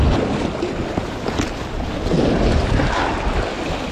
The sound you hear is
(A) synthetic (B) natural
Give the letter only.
B